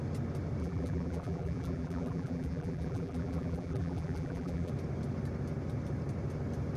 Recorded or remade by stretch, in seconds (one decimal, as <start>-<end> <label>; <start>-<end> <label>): 0.0-0.6 recorded; 0.6-4.7 remade; 4.7-6.8 recorded

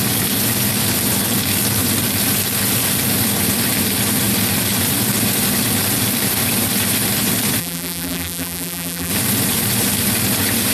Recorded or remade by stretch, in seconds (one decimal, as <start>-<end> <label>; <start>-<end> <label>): 0.0-7.6 recorded; 7.6-9.1 remade; 9.1-10.7 recorded

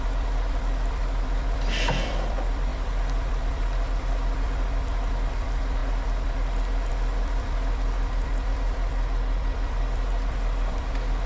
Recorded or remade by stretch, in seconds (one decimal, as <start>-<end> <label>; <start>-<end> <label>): 0.0-11.3 remade

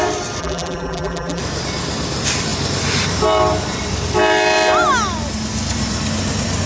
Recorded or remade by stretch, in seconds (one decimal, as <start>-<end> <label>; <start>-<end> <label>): 0.0-0.4 recorded; 0.4-1.4 remade; 1.4-6.7 recorded